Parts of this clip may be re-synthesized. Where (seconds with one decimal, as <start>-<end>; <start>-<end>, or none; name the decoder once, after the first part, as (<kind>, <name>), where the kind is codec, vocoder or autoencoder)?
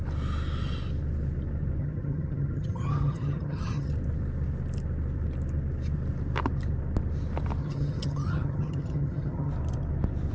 1.8-3.9 (vocoder, HiFi-GAN); 7.6-9.5